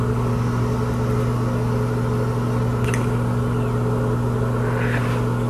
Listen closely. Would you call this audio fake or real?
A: real